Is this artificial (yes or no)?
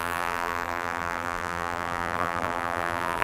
yes